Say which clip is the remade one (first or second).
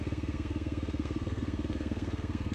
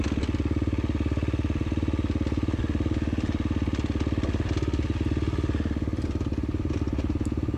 first